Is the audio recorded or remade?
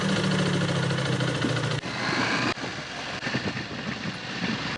recorded